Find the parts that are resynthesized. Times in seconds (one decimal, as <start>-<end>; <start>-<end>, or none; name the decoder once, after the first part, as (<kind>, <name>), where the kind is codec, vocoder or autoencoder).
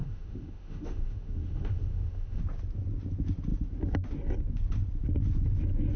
0.0-2.4 (autoencoder, DAC-VAE)